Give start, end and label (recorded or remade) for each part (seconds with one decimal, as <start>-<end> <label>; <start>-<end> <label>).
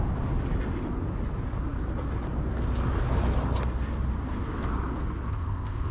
0.0-5.3 recorded; 5.3-5.9 remade